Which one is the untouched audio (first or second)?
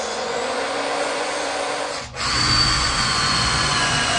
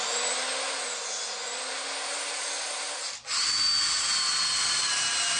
second